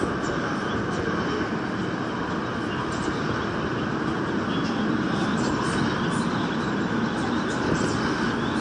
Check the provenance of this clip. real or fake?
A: real